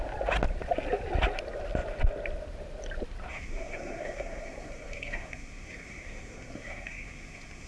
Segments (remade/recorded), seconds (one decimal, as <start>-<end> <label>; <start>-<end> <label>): 0.0-3.3 recorded; 3.3-7.7 remade